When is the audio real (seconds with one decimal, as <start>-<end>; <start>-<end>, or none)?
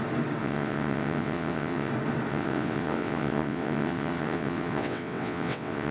0.0-0.4; 1.9-2.3